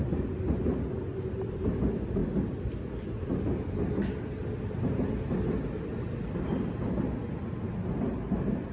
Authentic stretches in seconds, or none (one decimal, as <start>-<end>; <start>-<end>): 0.0-8.7